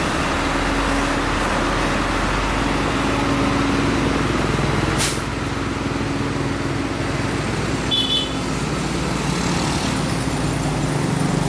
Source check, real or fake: real